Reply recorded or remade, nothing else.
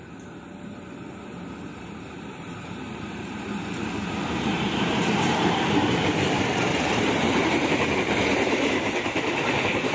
remade